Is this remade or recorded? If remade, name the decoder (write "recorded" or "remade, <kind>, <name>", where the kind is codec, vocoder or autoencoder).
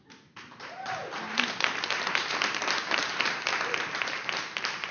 remade, vocoder, BigVGAN v2